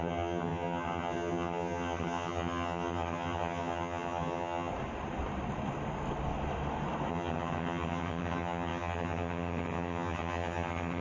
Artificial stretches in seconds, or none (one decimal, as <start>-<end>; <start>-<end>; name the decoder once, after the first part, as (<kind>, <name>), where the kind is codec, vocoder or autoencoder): 0.0-4.7 (vocoder, HiFi-GAN); 7.1-11.0